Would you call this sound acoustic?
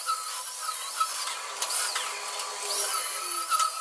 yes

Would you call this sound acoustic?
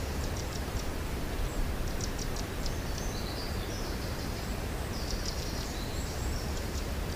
no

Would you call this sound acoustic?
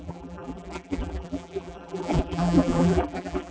no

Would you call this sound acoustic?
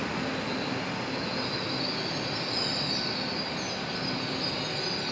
yes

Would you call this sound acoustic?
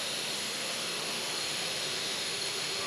no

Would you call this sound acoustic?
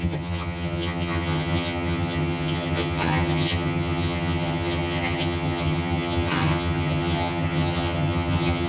no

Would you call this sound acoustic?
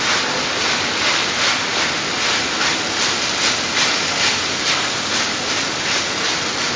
yes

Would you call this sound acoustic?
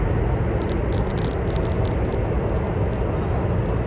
yes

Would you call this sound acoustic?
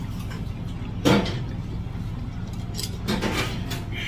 yes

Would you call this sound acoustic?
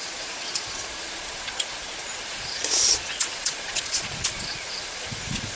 no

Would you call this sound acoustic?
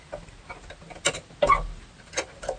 yes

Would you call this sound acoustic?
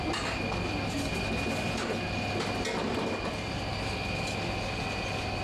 yes